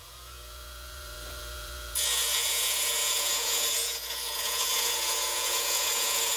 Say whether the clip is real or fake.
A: fake